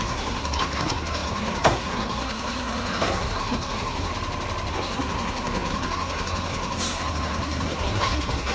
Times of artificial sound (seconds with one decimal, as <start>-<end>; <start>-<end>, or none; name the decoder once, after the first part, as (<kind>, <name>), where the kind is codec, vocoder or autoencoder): 0.0-4.1 (codec, SNAC); 4.7-8.5